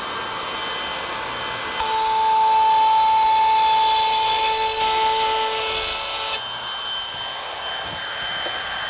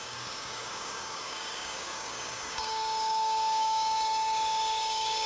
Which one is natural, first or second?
first